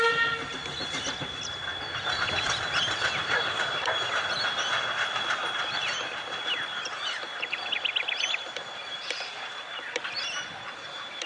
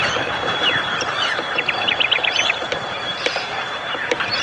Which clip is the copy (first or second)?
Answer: second